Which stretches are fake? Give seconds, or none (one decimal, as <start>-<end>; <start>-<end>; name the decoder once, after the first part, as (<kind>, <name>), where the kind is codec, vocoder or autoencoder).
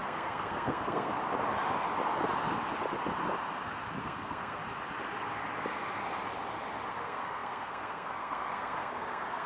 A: 0.0-1.1 (codec, SNAC); 4.0-4.6; 6.9-9.5